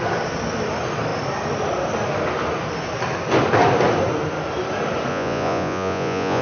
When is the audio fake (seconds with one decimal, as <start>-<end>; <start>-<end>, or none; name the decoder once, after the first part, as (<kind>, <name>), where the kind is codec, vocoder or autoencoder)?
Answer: 5.1-6.4 (vocoder, Vocos)